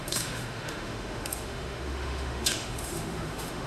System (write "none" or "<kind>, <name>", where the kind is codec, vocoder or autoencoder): autoencoder, DAC-VAE